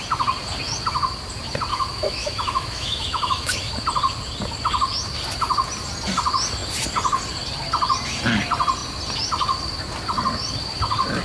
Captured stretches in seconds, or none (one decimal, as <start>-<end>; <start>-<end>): 0.0-1.7; 3.7-11.2